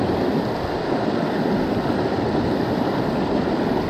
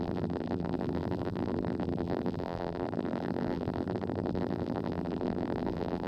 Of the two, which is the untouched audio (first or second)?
first